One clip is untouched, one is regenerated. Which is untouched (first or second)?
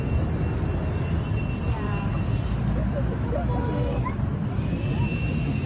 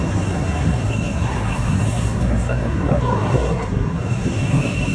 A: first